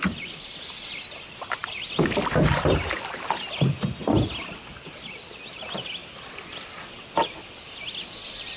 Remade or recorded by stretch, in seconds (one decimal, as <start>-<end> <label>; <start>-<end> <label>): 0.0-1.6 recorded; 1.6-3.3 remade; 3.3-6.0 recorded; 6.0-7.9 remade; 7.9-8.6 recorded